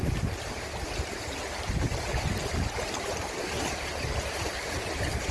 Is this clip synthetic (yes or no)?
no